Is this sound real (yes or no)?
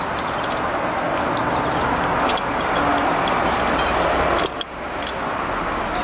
yes